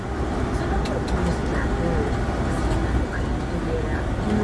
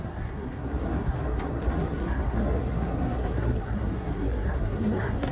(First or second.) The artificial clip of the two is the second